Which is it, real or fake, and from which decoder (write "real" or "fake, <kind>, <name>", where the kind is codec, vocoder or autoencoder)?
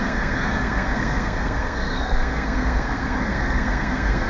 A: fake, codec, SNAC